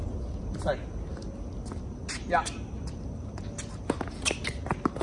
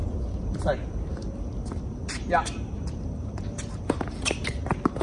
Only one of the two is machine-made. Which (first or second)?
second